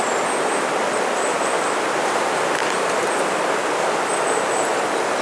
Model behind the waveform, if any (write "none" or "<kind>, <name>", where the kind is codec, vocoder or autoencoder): none